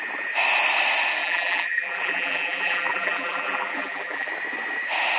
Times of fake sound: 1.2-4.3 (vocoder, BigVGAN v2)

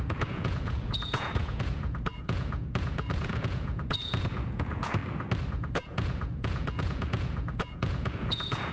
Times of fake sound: 0.0-5.0 (vocoder, Vocos); 5.5-8.7

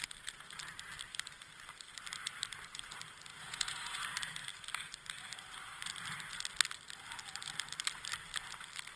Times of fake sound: 3.3-4.0 (vocoder, Vocos)

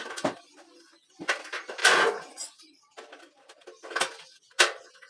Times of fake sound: 1.8-2.6 (vocoder, Vocos)

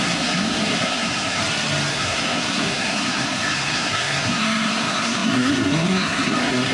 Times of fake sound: 0.0-1.4 (codec, SNAC); 1.9-6.7

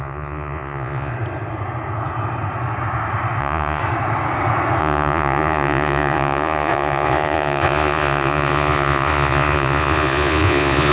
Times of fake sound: 0.0-1.1 (vocoder, Vocos); 3.4-3.8; 4.8-10.9

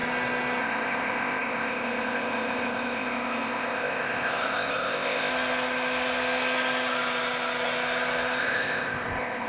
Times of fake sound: 0.6-5.3 (codec, ZipCodec); 8.4-9.5

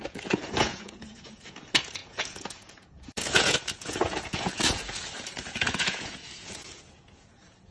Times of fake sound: 0.0-7.7 (vocoder, Vocos)